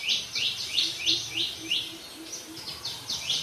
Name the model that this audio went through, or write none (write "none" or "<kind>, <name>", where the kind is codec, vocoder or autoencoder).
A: none